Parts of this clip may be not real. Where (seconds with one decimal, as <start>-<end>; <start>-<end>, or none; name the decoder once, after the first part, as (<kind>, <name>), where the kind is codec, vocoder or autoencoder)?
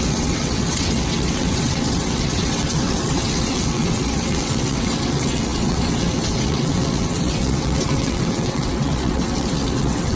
0.0-10.2 (vocoder, WaveNeXt)